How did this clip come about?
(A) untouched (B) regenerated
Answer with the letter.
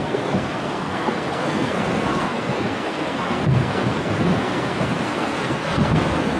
B